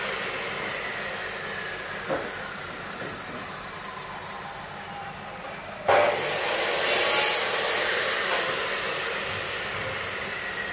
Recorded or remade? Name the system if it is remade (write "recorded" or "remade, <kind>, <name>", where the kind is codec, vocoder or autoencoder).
recorded